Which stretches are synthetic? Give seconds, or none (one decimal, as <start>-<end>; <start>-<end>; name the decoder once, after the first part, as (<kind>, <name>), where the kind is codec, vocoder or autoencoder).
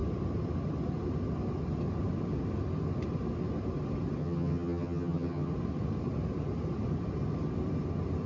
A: 4.2-5.5 (vocoder, HiFi-GAN)